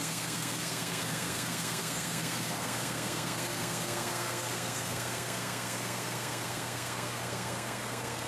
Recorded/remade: remade